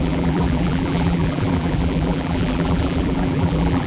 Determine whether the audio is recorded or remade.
remade